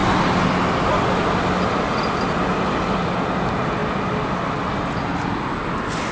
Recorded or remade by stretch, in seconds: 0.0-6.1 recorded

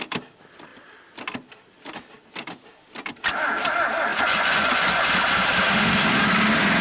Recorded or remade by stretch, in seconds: 0.0-4.1 recorded; 4.1-5.1 remade; 5.1-6.8 recorded

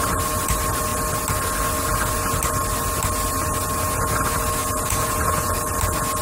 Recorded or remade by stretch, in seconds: 0.0-4.6 recorded; 4.6-5.7 remade; 5.7-6.2 recorded